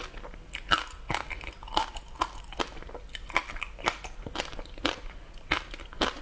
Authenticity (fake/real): real